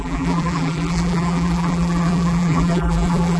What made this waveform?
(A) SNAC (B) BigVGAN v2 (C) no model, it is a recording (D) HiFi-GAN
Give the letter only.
B